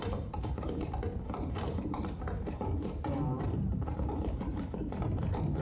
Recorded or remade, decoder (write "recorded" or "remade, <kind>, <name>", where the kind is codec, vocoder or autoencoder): remade, vocoder, BigVGAN v2